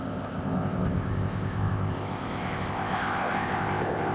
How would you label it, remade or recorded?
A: remade